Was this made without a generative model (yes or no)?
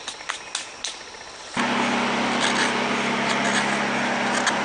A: yes